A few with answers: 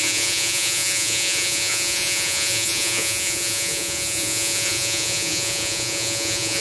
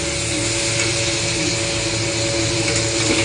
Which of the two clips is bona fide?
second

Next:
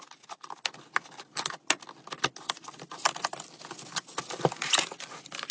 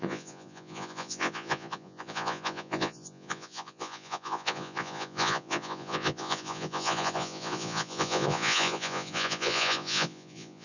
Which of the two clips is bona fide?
first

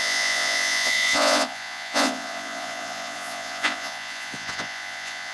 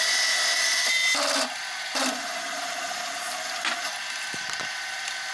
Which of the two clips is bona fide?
second